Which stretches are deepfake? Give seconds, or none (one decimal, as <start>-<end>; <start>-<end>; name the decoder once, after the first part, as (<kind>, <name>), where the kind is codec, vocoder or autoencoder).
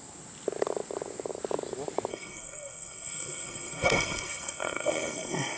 2.1-5.6 (codec, SNAC)